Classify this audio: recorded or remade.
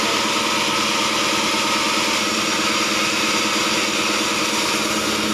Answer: recorded